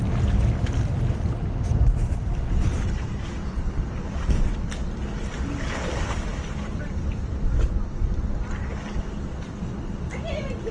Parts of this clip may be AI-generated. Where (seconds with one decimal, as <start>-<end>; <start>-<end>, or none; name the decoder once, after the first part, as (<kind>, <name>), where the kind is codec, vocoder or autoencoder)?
6.3-6.8 (vocoder, BigVGAN v2)